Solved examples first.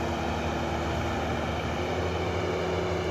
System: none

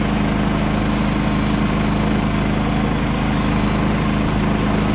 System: none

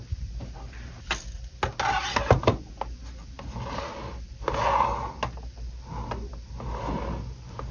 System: none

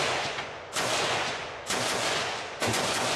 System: vocoder, Vocos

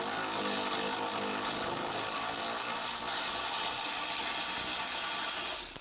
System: none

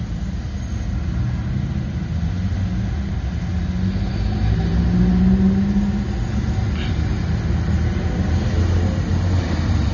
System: none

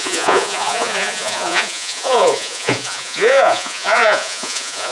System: vocoder, Vocos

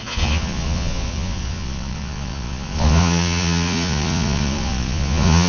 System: vocoder, Vocos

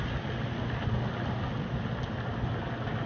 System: none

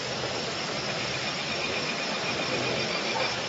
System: none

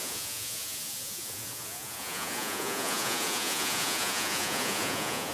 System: vocoder, Vocos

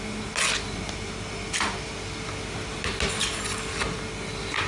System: none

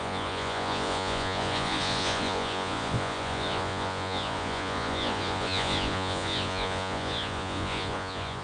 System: vocoder, Vocos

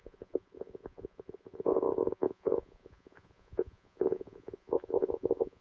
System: vocoder, Vocos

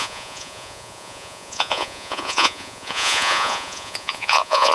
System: vocoder, Vocos